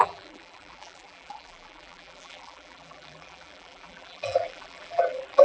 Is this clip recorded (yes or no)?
no